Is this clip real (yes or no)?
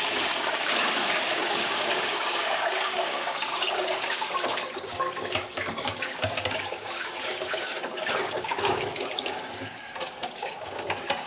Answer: no